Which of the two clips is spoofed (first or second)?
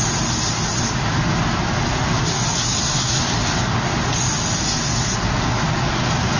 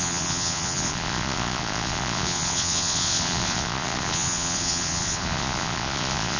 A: second